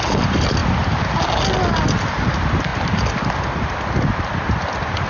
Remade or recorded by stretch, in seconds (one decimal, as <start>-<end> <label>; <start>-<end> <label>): 0.0-5.1 recorded